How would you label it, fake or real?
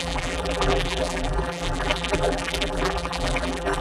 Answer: fake